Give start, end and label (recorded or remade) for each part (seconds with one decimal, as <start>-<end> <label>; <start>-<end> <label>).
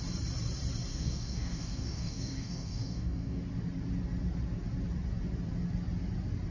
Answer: 0.0-0.9 recorded; 0.9-3.4 remade; 3.4-6.5 recorded